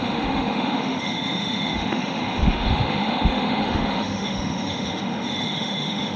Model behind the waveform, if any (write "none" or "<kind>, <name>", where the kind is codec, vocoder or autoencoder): autoencoder, DAC-VAE